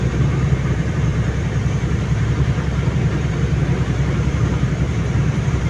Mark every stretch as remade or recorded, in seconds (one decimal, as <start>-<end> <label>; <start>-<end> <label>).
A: 0.0-5.7 remade